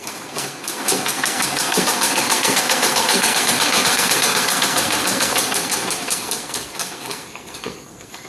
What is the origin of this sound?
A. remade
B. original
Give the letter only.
A